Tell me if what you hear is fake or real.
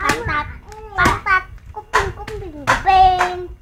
real